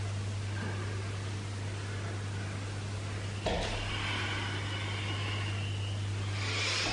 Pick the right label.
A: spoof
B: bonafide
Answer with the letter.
B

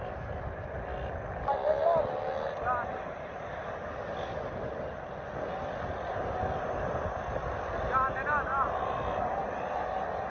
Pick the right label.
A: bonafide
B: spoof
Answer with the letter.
A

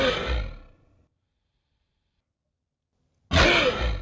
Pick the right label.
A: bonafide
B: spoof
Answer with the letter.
A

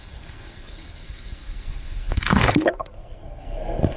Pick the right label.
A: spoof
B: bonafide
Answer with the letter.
A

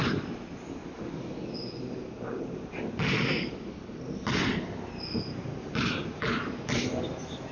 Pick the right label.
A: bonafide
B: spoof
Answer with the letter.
A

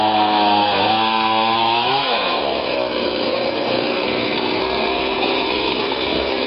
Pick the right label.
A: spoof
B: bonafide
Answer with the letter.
A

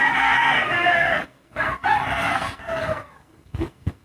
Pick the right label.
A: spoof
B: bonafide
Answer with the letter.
A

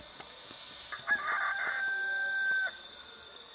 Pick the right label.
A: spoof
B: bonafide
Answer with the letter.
B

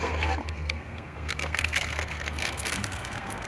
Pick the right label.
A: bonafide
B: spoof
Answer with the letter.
B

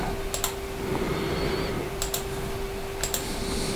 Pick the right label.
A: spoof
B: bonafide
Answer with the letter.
B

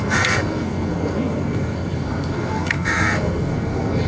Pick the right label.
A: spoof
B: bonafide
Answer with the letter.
A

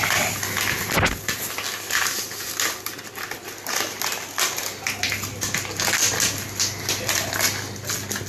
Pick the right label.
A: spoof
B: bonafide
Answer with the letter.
B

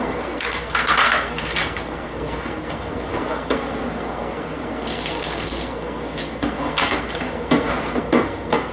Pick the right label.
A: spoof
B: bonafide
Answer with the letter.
A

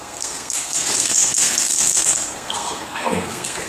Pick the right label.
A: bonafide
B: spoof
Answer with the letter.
B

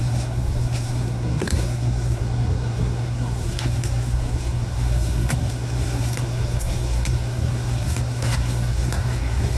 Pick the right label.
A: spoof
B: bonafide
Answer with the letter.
A